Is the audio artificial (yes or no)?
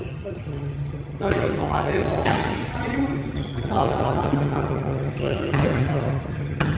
yes